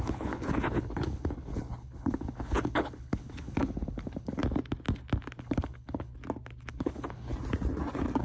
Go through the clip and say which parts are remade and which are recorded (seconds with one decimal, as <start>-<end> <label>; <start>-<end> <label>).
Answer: 0.0-4.4 remade; 4.4-5.4 recorded; 5.4-6.1 remade; 6.1-6.7 recorded; 6.7-7.3 remade; 7.3-8.2 recorded